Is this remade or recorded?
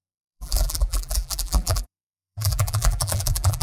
remade